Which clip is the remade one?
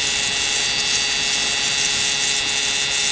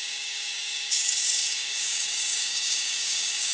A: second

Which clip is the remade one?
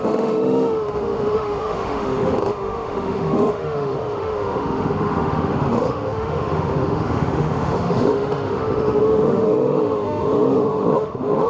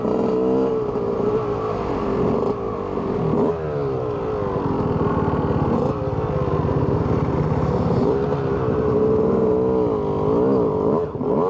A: first